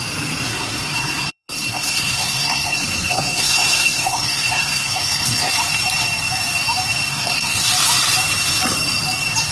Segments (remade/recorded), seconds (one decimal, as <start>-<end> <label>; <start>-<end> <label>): 0.0-0.5 recorded; 0.5-5.5 remade; 5.5-7.1 recorded; 7.1-7.7 remade; 7.7-9.5 recorded